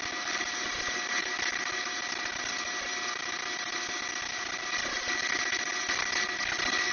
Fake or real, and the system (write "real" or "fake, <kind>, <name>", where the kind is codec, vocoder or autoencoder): real